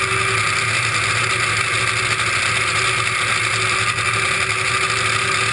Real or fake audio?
real